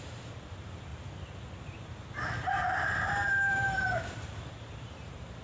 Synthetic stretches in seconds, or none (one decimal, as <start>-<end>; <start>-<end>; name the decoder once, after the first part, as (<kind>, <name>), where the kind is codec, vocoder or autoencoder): 0.0-0.9 (vocoder, BigVGAN v2); 3.5-5.4